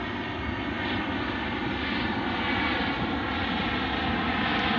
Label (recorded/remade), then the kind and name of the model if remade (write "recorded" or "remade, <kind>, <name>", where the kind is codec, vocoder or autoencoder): recorded